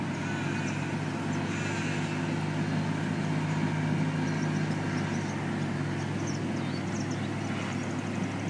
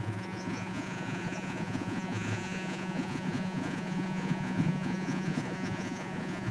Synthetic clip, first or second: second